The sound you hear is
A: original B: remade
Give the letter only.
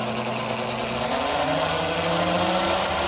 A